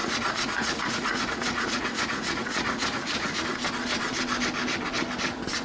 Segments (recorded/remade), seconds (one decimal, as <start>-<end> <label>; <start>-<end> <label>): 0.0-3.4 remade; 3.4-5.6 recorded